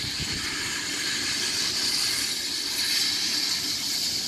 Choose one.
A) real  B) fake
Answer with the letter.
A